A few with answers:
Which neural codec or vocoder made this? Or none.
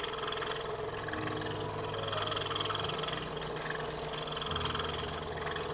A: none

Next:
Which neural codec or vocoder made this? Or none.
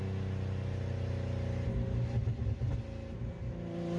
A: none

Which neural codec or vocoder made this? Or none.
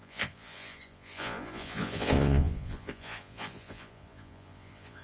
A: vocoder, Vocos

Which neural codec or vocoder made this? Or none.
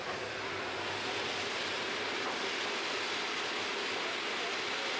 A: none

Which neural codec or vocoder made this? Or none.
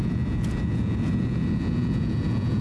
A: vocoder, Vocos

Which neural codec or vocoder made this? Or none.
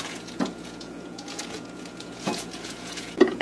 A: vocoder, Vocos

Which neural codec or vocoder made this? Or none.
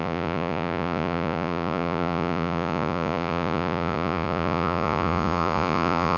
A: vocoder, Vocos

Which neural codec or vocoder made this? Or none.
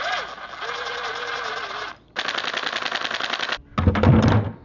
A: none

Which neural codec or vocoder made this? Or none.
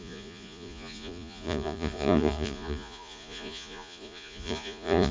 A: vocoder, Vocos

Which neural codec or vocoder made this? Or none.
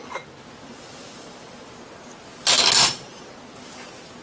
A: none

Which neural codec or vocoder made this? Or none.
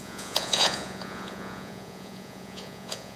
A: vocoder, Vocos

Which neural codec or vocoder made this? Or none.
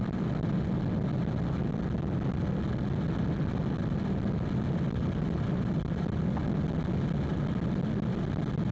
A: none